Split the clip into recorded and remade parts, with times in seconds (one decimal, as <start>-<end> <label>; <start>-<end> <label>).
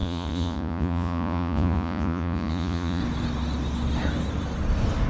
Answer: 0.0-3.0 remade; 3.0-5.1 recorded